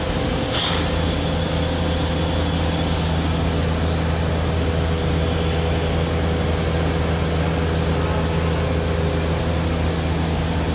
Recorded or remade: recorded